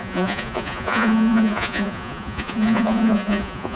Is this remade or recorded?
remade